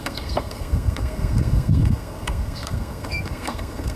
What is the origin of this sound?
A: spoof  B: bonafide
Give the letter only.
A